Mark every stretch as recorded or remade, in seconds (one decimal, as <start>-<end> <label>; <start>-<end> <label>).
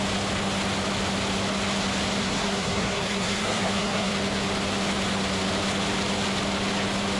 0.0-2.2 recorded; 2.2-4.1 remade; 4.1-7.2 recorded